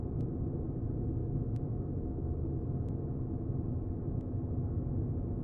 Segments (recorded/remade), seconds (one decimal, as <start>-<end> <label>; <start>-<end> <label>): 0.0-1.2 recorded; 1.2-4.4 remade; 4.4-5.4 recorded